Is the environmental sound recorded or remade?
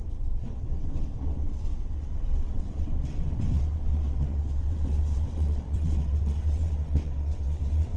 remade